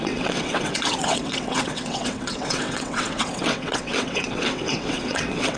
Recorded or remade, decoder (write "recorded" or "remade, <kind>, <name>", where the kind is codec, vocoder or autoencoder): remade, vocoder, WaveNeXt